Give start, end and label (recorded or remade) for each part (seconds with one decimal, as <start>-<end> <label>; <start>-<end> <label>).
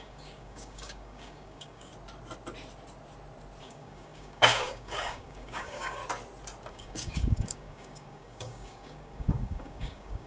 0.0-1.9 remade; 1.9-3.6 recorded; 3.6-6.0 remade; 6.0-6.7 recorded; 6.7-10.3 remade